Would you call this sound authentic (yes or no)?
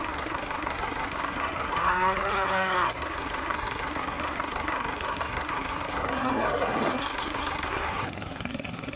no